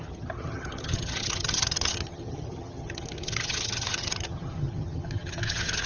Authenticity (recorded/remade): remade